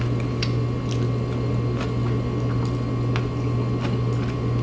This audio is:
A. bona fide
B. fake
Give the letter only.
A